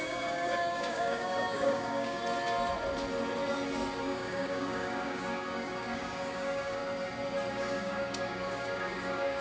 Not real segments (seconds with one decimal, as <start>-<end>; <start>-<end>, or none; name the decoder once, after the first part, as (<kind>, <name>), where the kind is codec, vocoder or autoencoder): 0.0-2.2 (codec, DAC); 4.0-6.8; 7.5-9.4